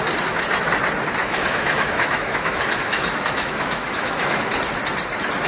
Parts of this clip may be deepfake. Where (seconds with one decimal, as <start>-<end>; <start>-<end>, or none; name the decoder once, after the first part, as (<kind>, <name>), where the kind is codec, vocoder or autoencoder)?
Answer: 1.2-4.5 (autoencoder, DAC-VAE)